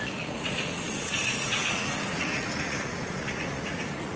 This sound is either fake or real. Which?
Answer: fake